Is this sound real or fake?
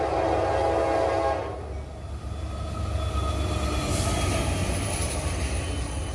real